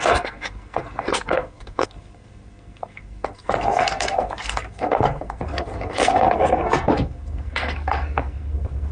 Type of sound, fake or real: fake